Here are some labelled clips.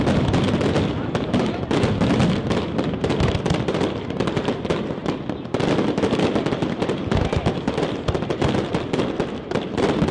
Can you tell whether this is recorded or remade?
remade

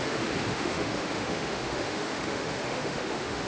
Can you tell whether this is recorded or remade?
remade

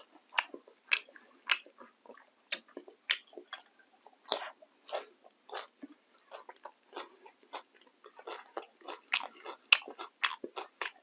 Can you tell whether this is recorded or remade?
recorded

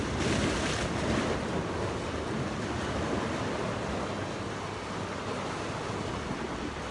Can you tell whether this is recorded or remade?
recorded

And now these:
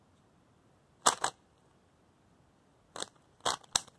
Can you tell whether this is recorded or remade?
recorded